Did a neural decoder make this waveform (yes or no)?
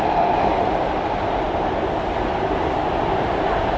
no